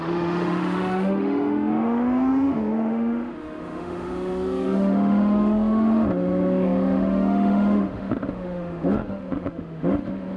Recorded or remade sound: remade